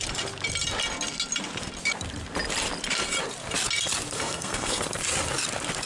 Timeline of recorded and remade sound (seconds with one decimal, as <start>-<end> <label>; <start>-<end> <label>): 0.0-4.2 recorded; 4.2-4.8 remade; 4.8-5.9 recorded